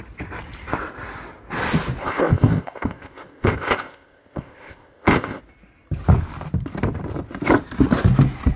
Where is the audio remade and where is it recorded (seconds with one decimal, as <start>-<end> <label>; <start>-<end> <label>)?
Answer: 0.0-2.0 recorded; 2.0-5.4 remade; 5.4-8.6 recorded